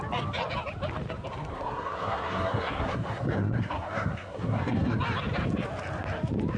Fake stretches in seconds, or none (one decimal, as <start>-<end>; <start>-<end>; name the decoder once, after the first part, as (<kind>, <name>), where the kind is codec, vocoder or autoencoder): 1.5-5.0 (codec, SNAC)

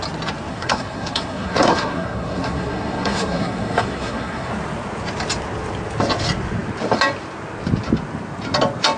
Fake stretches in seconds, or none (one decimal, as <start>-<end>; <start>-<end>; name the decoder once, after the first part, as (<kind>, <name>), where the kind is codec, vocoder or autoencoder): 0.5-4.5 (codec, SNAC)

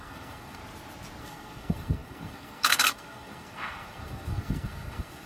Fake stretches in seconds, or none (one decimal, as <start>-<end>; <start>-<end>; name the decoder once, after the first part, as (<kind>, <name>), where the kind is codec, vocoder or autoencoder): 0.0-0.6 (codec, SNAC); 1.2-5.3

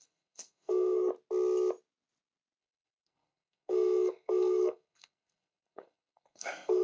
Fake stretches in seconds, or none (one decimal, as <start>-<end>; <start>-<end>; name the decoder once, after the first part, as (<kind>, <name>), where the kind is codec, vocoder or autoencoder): 0.0-1.1 (codec, SNAC); 2.6-6.8

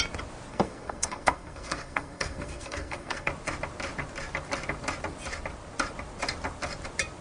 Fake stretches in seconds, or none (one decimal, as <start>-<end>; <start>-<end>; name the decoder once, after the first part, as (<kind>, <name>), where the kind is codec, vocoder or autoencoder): 0.5-3.3 (codec, SNAC)

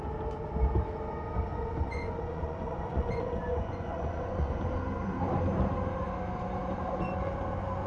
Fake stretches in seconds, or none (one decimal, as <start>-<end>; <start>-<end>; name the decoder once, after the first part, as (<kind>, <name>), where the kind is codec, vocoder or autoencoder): 1.5-4.5 (vocoder, Vocos)

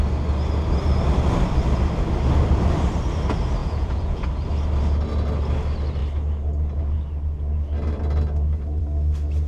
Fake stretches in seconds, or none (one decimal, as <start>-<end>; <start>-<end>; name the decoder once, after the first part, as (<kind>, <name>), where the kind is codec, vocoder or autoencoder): 3.6-4.3 (vocoder, Vocos)